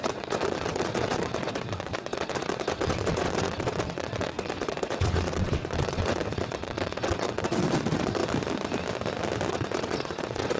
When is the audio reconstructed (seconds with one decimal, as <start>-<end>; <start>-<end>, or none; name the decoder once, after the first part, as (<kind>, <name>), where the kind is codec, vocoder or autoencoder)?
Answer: 0.0-8.2 (vocoder, WaveNeXt); 9.5-10.6